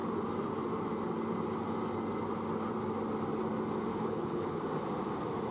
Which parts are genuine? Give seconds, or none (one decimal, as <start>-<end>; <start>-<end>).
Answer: 0.0-3.9; 4.6-5.5